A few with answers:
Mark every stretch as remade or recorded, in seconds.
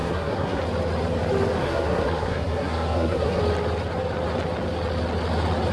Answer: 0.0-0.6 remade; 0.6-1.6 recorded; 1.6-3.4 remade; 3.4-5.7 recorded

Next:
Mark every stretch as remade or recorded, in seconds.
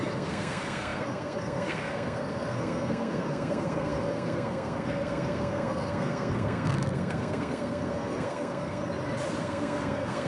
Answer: 0.0-8.8 remade; 8.8-9.4 recorded; 9.4-10.3 remade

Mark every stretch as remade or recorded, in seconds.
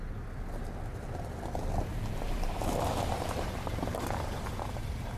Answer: 0.0-1.9 recorded; 1.9-5.2 remade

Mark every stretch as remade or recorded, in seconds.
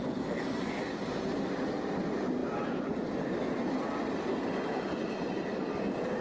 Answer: 0.0-6.2 recorded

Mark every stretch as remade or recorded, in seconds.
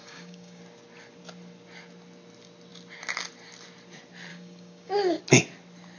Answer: 0.0-0.6 remade; 0.6-4.3 recorded; 4.3-5.2 remade; 5.2-6.0 recorded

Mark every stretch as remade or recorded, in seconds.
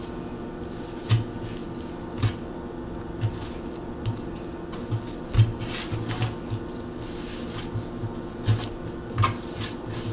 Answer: 0.0-10.1 recorded